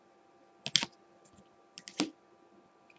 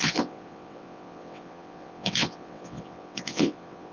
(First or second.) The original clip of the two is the first